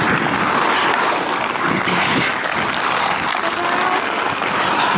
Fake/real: real